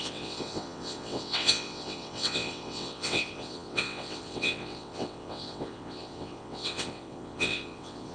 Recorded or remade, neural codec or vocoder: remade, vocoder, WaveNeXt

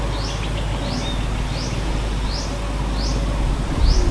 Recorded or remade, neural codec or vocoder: recorded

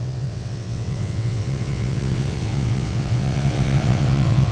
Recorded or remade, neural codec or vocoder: remade, vocoder, WaveNeXt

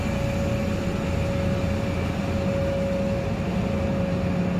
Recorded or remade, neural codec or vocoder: recorded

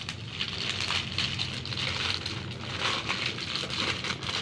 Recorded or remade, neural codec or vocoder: recorded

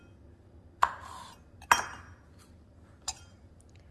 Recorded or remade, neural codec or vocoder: recorded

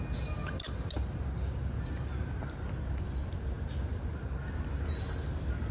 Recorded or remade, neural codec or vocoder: recorded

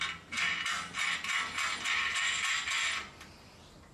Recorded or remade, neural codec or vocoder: recorded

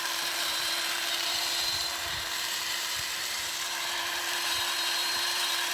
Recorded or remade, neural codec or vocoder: remade, vocoder, BigVGAN v2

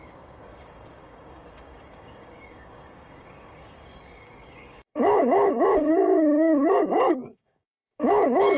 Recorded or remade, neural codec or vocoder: remade, codec, DAC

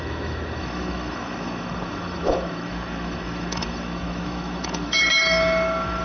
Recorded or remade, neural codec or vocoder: remade, autoencoder, DAC-VAE